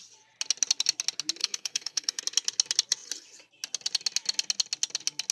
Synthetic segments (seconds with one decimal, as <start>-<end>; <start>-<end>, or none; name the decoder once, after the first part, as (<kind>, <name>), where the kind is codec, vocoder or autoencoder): 1.4-2.2 (codec, SNAC)